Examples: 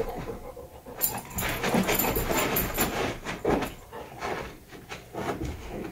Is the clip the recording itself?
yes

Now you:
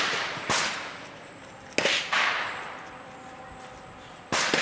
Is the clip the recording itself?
yes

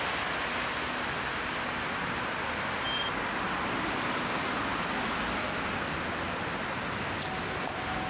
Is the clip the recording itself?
yes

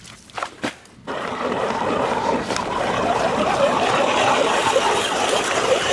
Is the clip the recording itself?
no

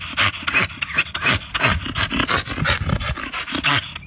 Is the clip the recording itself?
yes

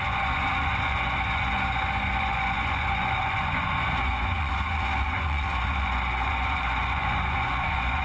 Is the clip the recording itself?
no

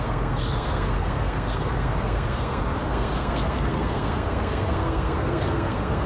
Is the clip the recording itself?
no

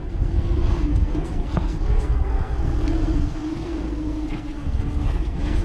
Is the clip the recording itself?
no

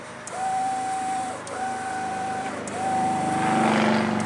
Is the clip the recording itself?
no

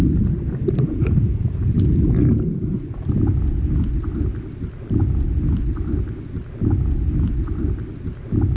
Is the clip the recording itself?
yes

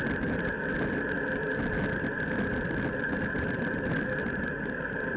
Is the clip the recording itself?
yes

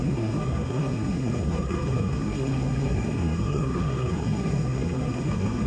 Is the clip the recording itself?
no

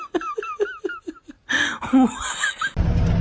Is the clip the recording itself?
yes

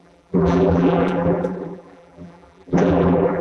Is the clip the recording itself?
no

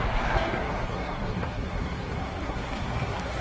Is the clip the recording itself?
no